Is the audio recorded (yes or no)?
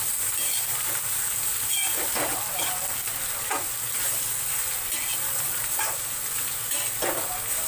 yes